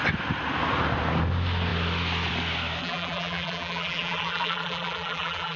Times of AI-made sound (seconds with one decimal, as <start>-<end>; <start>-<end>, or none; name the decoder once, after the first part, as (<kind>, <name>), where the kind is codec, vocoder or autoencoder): 2.8-5.6 (vocoder, BigVGAN v2)